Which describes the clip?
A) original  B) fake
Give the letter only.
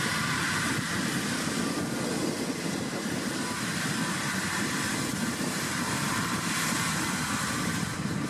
B